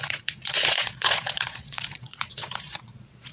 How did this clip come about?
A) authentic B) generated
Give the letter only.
B